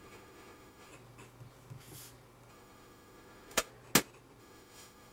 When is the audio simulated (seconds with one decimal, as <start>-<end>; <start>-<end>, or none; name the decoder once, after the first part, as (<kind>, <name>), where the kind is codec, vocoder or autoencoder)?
0.0-0.9 (autoencoder, DAC-VAE); 2.5-3.7; 4.4-5.1